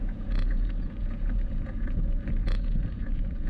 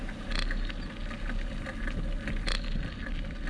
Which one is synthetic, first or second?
first